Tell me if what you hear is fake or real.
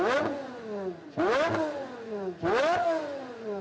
fake